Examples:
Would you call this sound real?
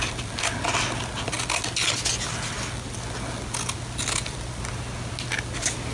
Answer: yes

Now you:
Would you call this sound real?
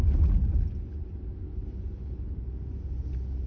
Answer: yes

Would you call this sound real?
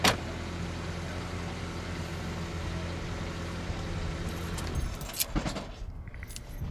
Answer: yes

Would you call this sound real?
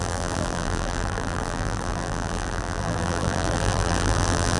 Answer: no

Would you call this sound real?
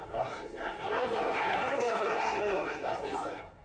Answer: no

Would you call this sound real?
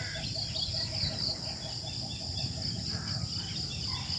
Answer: yes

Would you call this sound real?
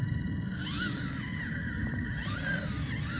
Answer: yes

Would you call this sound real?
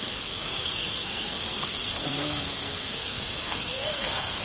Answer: no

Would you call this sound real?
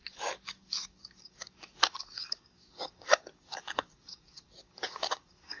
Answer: no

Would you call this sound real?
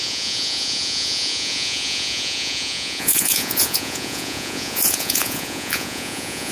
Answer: no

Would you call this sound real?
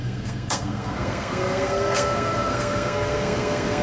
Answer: no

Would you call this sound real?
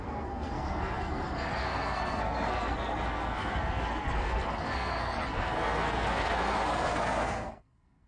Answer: no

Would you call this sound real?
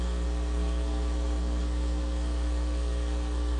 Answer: no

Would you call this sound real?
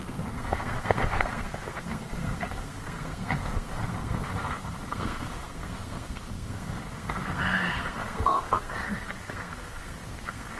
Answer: no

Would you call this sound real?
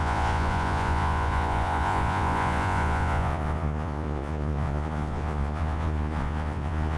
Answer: no